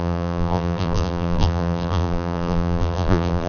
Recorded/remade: remade